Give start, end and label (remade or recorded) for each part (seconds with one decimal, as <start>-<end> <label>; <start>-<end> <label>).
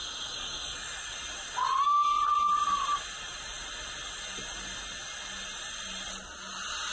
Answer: 0.0-6.9 recorded